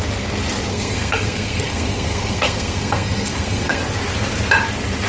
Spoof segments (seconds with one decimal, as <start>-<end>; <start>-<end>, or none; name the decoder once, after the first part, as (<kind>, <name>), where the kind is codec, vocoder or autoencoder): 0.7-3.8 (codec, SNAC)